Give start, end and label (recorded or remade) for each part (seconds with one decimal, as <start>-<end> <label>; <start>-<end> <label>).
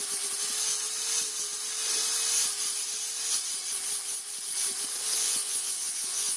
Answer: 0.0-5.2 recorded; 5.2-6.4 remade